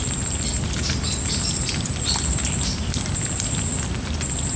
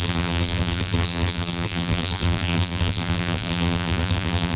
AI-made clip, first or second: second